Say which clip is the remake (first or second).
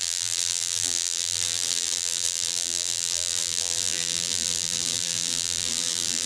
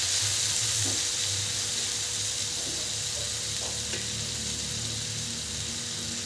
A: first